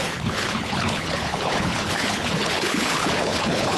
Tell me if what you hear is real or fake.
fake